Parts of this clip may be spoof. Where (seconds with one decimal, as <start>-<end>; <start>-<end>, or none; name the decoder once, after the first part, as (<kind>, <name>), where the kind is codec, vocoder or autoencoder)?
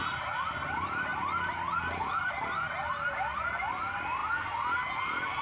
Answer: none